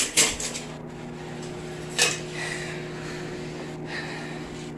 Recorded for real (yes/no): yes